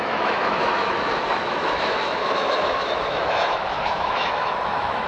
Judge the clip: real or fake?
fake